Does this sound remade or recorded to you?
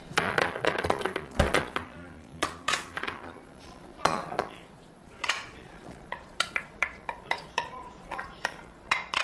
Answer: remade